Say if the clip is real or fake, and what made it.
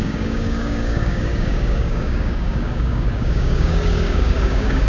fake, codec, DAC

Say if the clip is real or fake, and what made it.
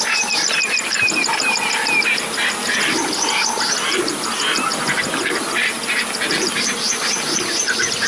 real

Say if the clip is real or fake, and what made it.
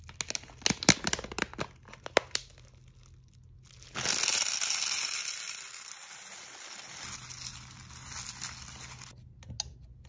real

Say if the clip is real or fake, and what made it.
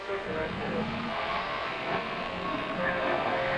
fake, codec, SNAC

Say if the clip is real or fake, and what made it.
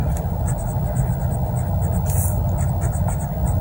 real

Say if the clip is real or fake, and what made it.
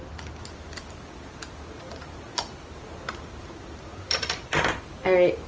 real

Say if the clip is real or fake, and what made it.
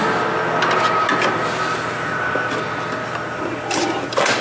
real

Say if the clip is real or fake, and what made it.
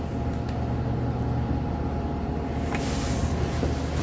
real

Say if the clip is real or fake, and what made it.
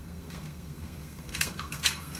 fake, codec, SNAC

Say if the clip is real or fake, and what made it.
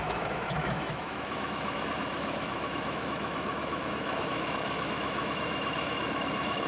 fake, autoencoder, DAC-VAE